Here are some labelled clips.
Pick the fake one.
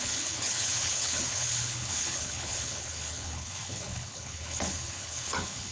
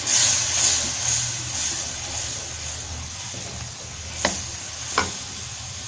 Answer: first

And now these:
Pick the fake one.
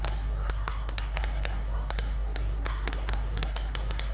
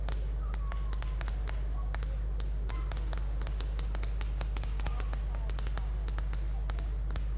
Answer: first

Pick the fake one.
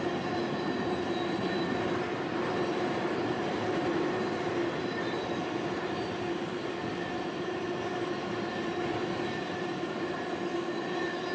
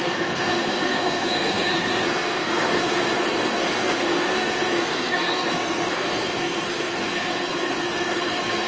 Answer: second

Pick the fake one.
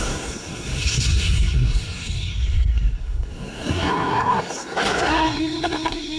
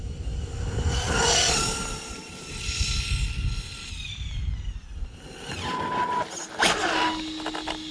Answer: first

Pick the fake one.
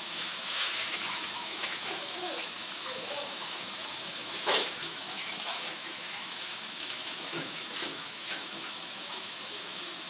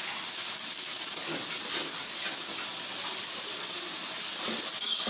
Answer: first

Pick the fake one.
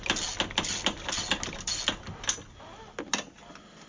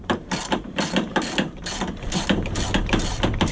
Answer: second